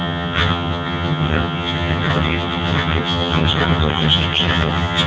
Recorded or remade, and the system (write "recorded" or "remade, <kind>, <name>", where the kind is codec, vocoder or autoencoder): remade, vocoder, HiFi-GAN